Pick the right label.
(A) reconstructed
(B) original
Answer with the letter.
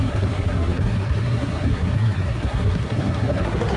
A